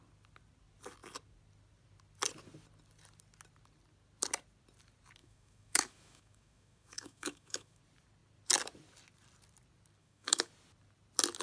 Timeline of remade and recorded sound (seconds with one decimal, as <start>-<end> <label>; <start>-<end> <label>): 0.0-5.2 recorded; 5.2-7.8 remade; 7.8-10.0 recorded; 10.0-10.5 remade; 10.5-11.4 recorded